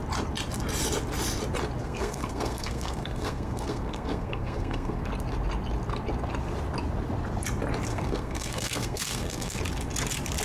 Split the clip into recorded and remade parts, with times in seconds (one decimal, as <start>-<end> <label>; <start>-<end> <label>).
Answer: 0.0-1.8 recorded; 1.8-5.0 remade; 5.0-7.9 recorded; 7.9-9.6 remade; 9.6-10.4 recorded